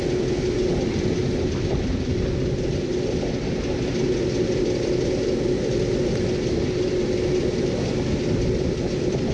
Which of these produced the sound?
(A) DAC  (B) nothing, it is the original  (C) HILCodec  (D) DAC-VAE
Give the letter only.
B